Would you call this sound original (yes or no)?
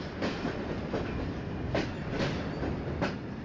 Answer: no